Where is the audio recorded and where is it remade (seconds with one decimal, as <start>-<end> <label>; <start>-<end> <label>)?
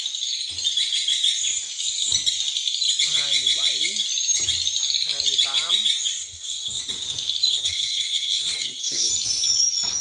0.0-6.1 recorded; 6.1-6.8 remade; 6.8-7.5 recorded; 7.5-9.1 remade; 9.1-10.0 recorded